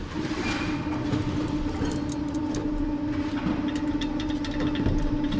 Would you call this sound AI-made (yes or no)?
no